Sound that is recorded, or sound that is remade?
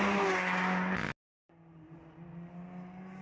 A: recorded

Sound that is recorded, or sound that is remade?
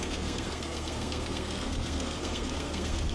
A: remade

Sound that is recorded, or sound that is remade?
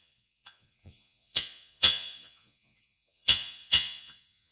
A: remade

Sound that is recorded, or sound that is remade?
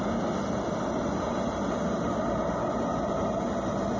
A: recorded